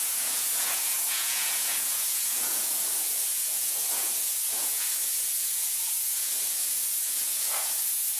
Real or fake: fake